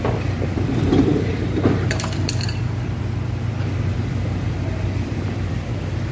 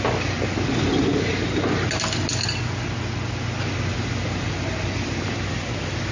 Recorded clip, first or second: second